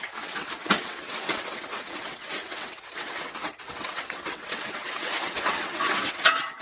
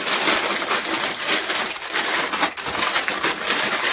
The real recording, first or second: second